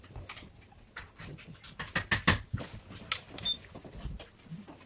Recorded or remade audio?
recorded